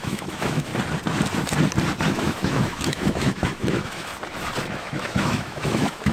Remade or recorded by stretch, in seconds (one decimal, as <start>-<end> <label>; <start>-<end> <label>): 0.0-0.7 remade; 0.7-2.1 recorded; 2.1-4.1 remade; 4.1-4.7 recorded; 4.7-6.1 remade